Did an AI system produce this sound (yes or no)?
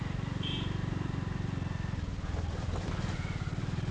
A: no